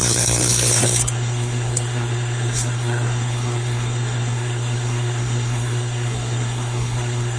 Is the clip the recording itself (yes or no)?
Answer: no